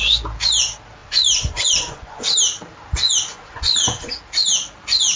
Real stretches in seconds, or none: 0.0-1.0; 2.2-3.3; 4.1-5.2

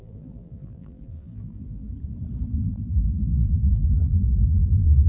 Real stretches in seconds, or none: 1.9-2.5

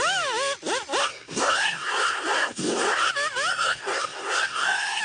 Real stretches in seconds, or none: 0.0-1.0; 3.1-3.5

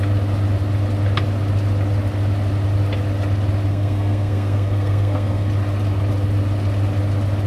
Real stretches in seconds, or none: 0.0-3.7; 5.5-7.5

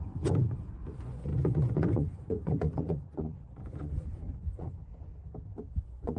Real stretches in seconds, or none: 5.1-5.7

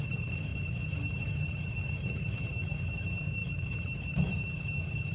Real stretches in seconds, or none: none